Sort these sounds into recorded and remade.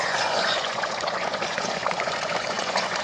remade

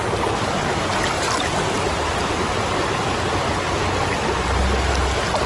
recorded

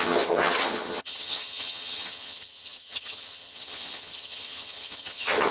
remade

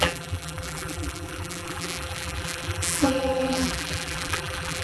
remade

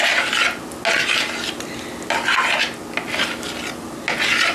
recorded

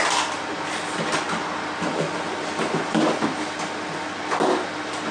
recorded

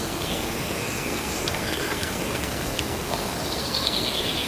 remade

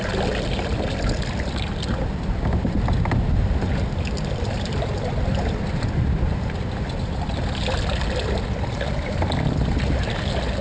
recorded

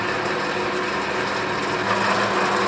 recorded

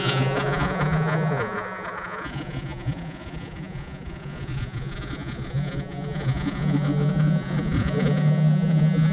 remade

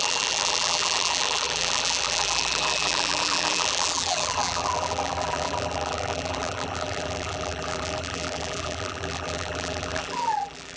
remade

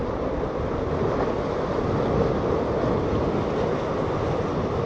recorded